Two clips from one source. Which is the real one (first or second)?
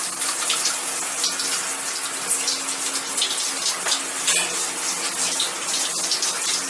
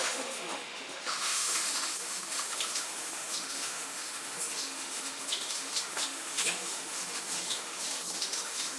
first